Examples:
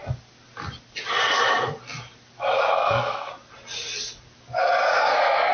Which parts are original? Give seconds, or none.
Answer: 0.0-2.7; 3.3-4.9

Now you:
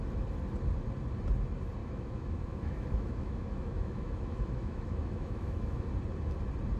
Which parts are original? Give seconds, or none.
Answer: 0.0-1.8; 5.9-6.8